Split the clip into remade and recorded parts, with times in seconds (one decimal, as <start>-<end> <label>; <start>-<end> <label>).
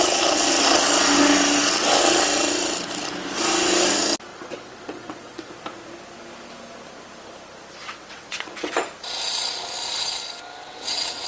0.0-4.3 recorded; 4.3-5.5 remade; 5.5-7.8 recorded; 7.8-8.7 remade; 8.7-10.6 recorded; 10.6-11.3 remade